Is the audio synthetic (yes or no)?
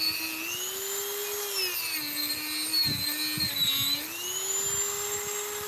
no